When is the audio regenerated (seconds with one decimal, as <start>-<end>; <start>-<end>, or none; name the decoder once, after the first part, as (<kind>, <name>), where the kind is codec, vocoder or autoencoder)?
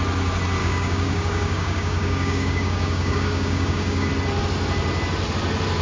0.6-4.1 (codec, DAC)